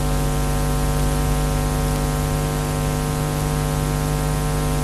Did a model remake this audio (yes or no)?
no